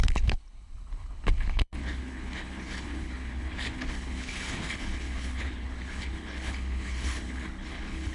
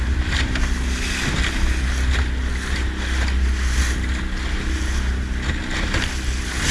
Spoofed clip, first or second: first